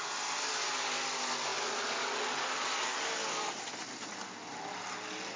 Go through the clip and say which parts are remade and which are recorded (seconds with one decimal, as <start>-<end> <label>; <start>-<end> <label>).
0.0-5.4 recorded